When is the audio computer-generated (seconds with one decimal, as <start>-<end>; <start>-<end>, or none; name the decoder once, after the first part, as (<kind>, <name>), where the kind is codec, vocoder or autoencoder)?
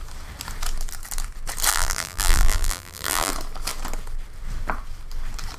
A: 1.7-3.3 (vocoder, BigVGAN v2)